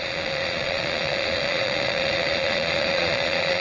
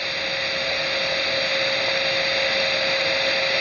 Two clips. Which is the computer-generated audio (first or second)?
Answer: first